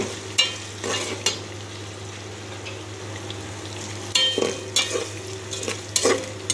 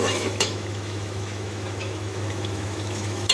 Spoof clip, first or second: second